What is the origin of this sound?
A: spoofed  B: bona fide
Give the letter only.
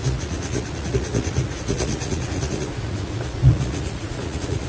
A